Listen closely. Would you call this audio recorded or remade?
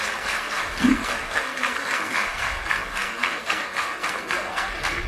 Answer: remade